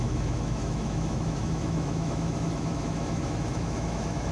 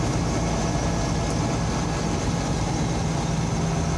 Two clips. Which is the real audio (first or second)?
second